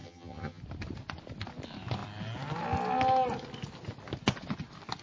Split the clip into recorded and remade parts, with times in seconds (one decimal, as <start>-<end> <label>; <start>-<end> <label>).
0.0-0.6 remade; 0.6-5.0 recorded